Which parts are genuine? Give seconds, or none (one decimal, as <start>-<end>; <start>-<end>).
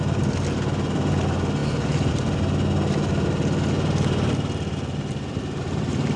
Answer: 0.0-6.2